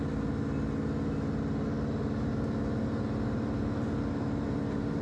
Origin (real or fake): real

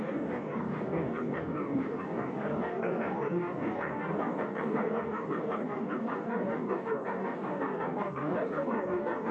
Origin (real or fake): fake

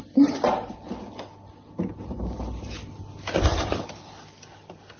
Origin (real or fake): real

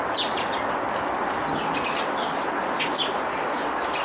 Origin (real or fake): real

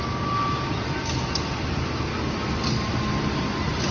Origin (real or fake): real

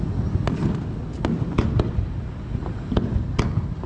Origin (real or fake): real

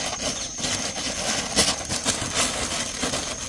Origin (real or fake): real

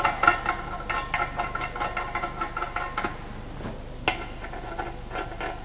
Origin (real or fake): real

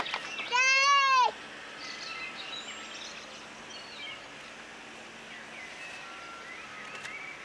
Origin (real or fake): real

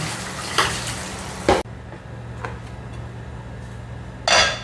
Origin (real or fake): real